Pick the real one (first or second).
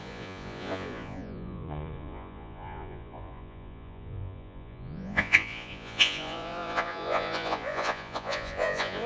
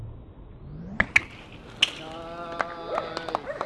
second